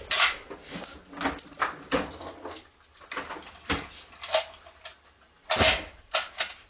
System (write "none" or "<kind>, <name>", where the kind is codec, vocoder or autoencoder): none